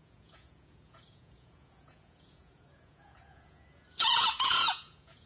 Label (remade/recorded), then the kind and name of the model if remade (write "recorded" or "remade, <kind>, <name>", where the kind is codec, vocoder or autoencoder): remade, vocoder, Vocos